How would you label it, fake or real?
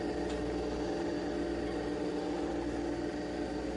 real